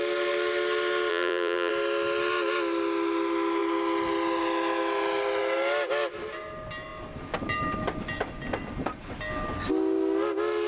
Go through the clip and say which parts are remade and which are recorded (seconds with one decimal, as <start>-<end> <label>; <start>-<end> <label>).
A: 0.0-1.1 recorded; 1.1-1.7 remade; 1.7-10.7 recorded